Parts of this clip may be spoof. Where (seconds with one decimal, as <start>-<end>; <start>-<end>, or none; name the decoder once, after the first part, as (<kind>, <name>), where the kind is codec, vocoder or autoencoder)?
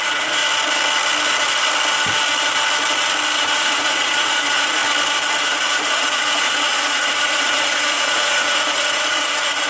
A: 0.0-0.4 (vocoder, Vocos); 3.4-4.8; 5.4-9.7